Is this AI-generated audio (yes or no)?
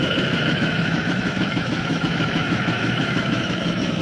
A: yes